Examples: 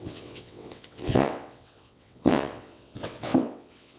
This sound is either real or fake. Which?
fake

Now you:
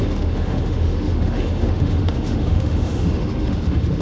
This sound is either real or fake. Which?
fake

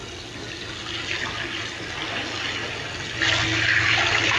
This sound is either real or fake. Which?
real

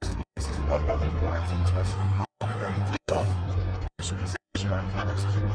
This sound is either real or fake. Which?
fake